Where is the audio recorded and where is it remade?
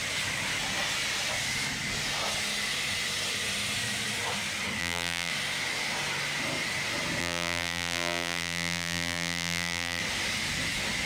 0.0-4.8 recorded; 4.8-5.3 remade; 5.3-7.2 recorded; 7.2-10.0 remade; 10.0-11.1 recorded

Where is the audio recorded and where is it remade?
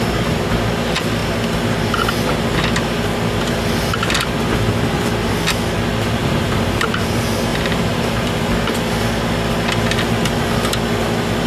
0.0-6.2 recorded; 6.2-6.9 remade; 6.9-7.5 recorded; 7.5-8.3 remade; 8.3-11.5 recorded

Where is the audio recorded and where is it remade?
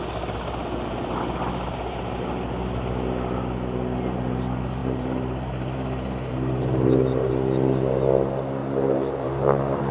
0.0-4.8 recorded; 4.8-7.3 remade; 7.3-8.6 recorded; 8.6-9.9 remade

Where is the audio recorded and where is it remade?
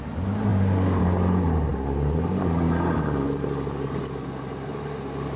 0.0-1.7 recorded; 1.7-4.0 remade; 4.0-5.4 recorded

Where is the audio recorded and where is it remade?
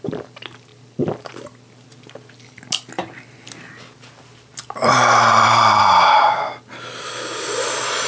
0.0-4.8 recorded; 4.8-5.8 remade; 5.8-8.1 recorded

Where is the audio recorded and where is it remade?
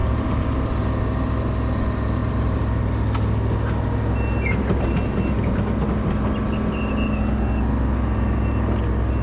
0.0-0.7 remade; 0.7-2.2 recorded; 2.2-2.9 remade; 2.9-9.2 recorded